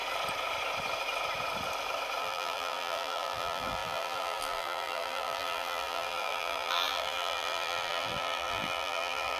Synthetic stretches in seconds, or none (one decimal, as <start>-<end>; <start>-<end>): 2.2-9.4